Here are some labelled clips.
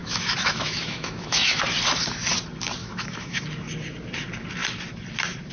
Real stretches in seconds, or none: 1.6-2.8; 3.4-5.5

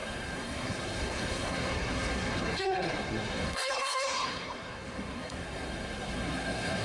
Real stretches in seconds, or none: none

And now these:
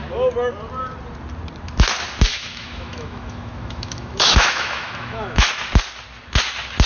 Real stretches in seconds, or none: 0.0-2.3; 5.5-6.9

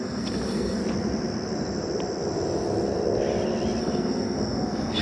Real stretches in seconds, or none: 0.8-3.8